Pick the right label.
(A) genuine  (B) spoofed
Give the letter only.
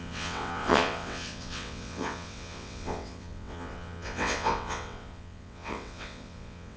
B